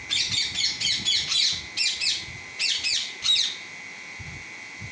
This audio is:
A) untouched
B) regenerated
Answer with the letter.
A